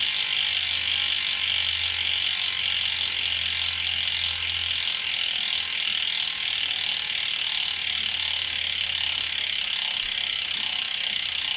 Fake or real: real